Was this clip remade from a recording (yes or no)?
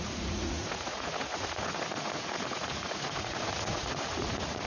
yes